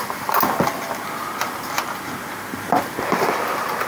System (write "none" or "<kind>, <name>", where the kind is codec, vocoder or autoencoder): none